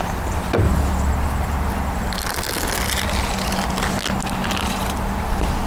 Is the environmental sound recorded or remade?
recorded